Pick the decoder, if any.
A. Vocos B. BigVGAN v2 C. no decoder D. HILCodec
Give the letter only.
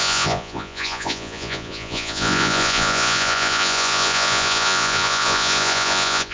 A